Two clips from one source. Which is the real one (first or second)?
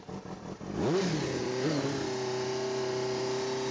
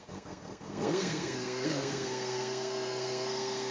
first